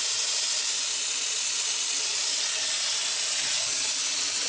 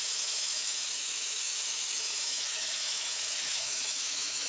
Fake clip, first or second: second